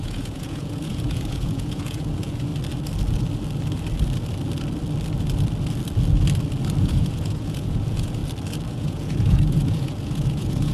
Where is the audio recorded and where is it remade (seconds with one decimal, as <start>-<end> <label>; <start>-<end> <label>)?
0.0-2.5 remade; 2.5-6.8 recorded; 6.8-8.2 remade; 8.2-8.7 recorded; 8.7-10.7 remade